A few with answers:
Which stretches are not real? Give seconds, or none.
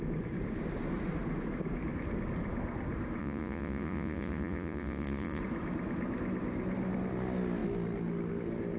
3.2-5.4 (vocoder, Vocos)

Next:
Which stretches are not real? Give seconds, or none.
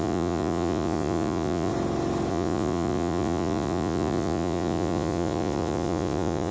0.0-1.7 (vocoder, Vocos); 2.3-6.5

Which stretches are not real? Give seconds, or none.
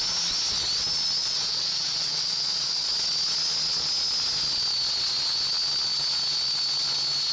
1.2-2.9 (vocoder, Vocos)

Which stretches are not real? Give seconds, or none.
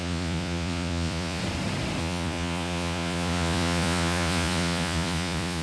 0.0-1.4 (vocoder, Vocos); 2.0-5.6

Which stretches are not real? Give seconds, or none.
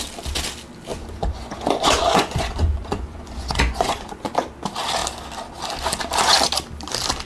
0.9-4.3 (vocoder, Vocos)